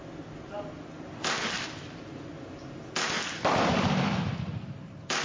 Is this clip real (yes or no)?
yes